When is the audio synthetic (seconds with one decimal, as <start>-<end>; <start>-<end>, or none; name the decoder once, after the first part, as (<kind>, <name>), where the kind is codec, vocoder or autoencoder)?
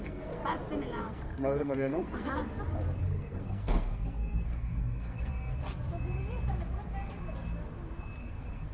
0.0-0.4 (codec, SNAC); 1.0-2.4; 3.0-5.5; 8.2-8.7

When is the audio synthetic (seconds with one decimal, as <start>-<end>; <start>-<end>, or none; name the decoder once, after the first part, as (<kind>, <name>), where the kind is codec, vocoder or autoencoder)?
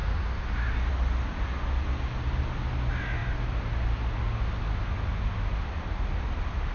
none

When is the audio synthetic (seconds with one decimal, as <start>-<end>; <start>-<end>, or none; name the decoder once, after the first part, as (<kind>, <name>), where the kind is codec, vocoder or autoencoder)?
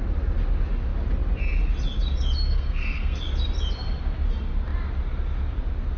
2.5-3.2 (codec, SNAC)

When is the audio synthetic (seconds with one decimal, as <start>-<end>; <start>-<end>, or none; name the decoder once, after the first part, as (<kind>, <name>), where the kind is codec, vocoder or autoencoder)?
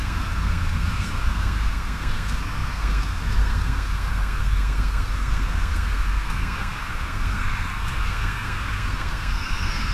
0.0-9.9 (codec, SNAC)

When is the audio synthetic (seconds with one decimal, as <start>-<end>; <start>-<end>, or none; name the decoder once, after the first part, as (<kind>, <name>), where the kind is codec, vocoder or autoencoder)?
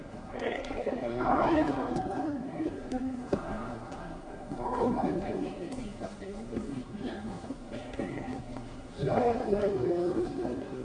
0.0-10.8 (codec, SNAC)